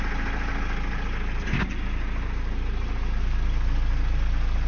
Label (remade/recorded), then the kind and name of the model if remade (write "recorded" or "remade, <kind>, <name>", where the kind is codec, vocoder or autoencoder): recorded